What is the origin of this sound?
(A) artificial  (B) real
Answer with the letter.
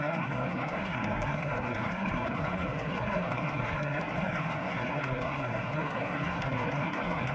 A